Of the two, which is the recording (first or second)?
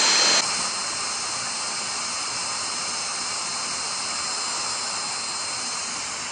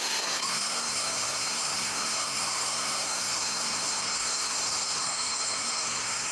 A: first